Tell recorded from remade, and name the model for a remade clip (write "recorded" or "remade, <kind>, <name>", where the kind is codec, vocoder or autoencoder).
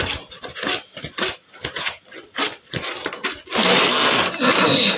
recorded